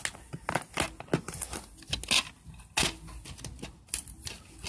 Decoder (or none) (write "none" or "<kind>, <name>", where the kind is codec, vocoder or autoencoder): none